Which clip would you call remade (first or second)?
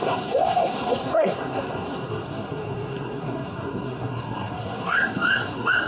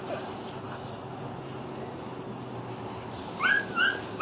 first